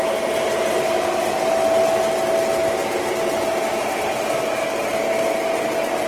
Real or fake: real